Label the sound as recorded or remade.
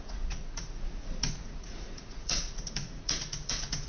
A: remade